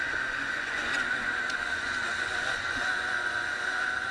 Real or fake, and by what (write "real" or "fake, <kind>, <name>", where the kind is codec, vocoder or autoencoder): fake, vocoder, Vocos